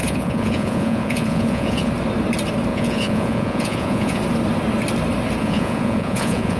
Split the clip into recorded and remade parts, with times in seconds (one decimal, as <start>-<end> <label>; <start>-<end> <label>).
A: 0.0-1.9 remade; 1.9-2.7 recorded; 2.7-4.2 remade; 4.2-5.4 recorded; 5.4-6.6 remade